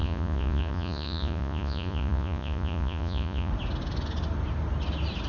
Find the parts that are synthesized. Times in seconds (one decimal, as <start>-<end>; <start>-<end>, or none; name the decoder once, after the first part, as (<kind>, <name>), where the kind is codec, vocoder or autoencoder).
0.0-3.5 (vocoder, Vocos)